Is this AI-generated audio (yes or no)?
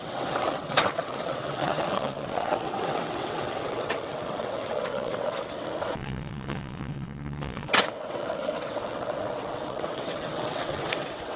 yes